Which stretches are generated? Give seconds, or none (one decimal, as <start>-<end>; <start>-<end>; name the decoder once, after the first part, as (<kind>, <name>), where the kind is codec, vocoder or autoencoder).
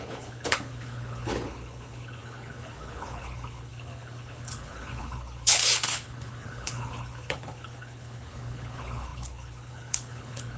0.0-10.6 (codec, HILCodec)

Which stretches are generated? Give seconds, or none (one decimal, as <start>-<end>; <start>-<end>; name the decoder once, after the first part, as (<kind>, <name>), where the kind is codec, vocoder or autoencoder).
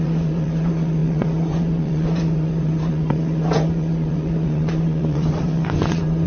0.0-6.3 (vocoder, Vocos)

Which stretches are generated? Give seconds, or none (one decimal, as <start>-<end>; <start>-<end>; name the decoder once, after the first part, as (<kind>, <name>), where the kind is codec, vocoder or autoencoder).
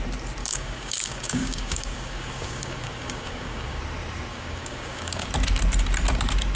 0.4-3.8 (codec, DAC); 4.3-5.3